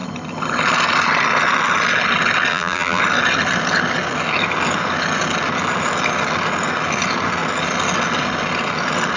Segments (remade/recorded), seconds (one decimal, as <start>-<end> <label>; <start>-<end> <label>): 0.0-2.5 recorded; 2.5-3.0 remade; 3.0-9.2 recorded